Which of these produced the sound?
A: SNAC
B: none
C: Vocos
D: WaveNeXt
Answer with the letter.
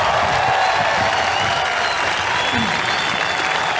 B